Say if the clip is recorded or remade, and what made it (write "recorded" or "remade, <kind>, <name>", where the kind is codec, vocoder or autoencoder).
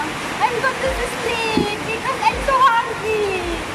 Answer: recorded